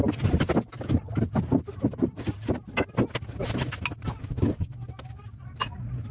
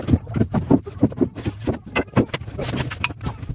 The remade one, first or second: second